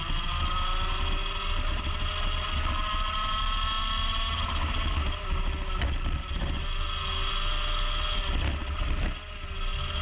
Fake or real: real